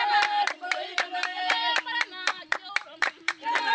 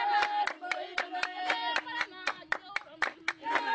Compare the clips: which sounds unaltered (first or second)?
second